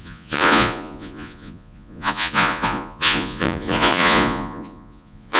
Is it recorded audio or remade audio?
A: remade